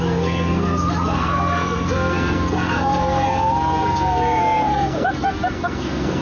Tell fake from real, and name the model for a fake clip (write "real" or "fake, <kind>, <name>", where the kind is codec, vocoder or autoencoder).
fake, codec, SNAC